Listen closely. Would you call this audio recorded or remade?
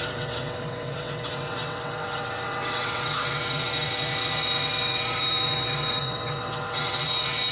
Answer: remade